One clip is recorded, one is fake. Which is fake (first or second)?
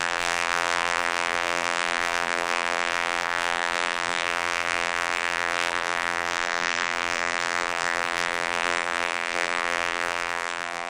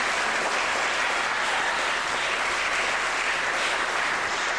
first